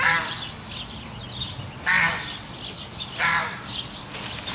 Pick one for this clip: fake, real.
real